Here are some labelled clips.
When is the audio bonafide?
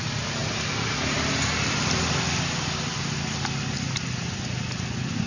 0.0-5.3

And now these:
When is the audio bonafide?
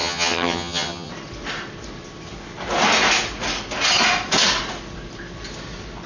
1.1-6.1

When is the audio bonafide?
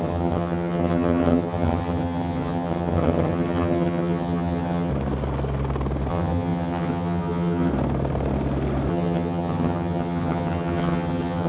4.9-6.1; 7.7-8.9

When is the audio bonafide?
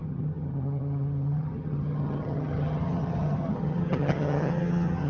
none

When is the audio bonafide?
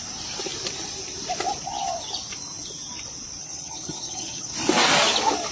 0.0-3.4; 4.5-5.5